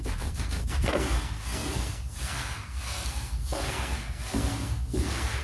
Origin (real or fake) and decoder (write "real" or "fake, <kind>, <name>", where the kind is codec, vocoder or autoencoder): fake, codec, SNAC